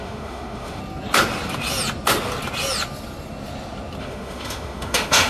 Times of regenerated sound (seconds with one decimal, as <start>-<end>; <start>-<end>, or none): 0.0-0.8; 4.0-5.3